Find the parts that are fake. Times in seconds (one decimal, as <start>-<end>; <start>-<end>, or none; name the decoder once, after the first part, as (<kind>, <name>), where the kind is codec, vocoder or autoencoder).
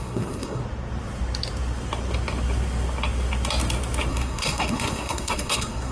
0.0-0.6 (codec, SNAC); 4.1-5.9